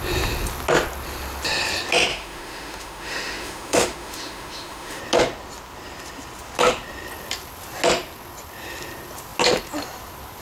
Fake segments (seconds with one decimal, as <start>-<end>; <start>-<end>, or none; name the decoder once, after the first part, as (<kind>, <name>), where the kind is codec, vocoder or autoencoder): 2.1-5.0 (autoencoder, DAC-VAE)